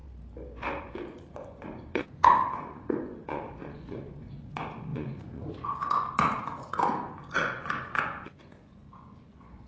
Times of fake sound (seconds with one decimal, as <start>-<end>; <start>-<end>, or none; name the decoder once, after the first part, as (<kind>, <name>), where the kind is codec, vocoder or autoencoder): 0.8-9.7 (vocoder, Vocos)